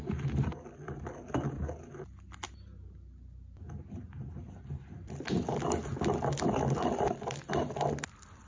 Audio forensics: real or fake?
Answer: real